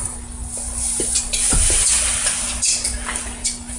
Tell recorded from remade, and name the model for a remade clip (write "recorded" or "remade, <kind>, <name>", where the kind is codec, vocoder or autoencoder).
recorded